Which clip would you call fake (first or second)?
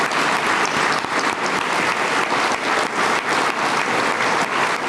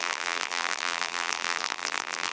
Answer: second